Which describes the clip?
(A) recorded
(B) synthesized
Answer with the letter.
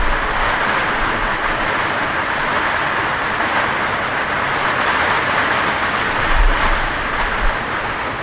A